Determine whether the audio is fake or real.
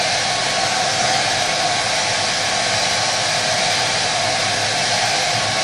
real